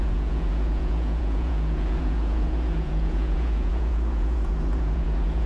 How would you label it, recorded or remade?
remade